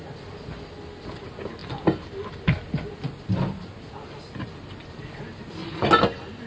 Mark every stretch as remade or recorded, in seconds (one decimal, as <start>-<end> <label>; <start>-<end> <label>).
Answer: 0.0-6.5 recorded